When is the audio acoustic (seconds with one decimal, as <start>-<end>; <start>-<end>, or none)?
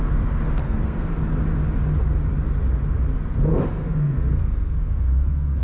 0.0-0.6; 1.1-3.5